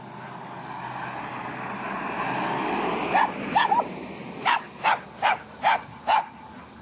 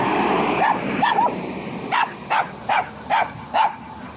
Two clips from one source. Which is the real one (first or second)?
first